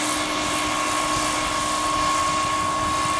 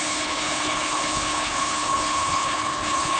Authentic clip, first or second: first